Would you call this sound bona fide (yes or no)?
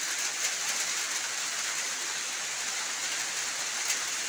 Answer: yes